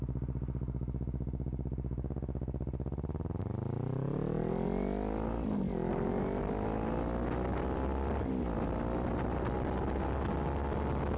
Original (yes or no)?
yes